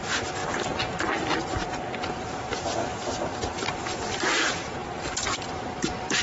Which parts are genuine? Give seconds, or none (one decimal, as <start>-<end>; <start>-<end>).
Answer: none